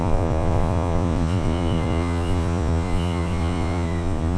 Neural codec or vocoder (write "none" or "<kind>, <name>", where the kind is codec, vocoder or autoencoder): vocoder, Vocos